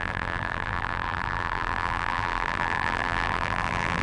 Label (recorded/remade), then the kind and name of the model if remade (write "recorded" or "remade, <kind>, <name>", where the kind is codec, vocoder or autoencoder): remade, vocoder, BigVGAN v2